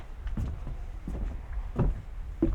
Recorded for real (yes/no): yes